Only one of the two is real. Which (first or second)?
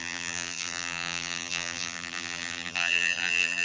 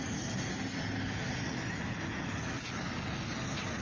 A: second